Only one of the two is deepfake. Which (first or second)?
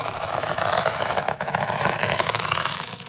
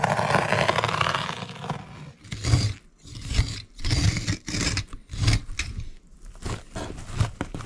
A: first